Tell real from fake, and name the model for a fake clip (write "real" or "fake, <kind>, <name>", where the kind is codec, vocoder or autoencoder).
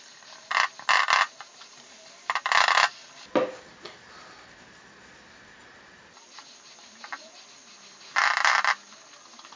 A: real